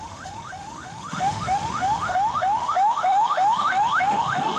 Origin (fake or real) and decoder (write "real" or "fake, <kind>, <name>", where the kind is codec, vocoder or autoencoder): fake, autoencoder, DAC-VAE